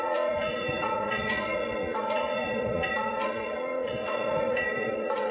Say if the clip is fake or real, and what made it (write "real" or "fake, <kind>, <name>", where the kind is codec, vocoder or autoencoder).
fake, vocoder, Vocos